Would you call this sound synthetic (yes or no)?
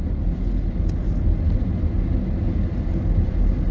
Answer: no